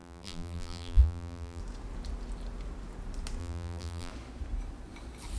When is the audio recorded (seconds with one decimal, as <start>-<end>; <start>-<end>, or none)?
1.6-3.4; 4.1-5.4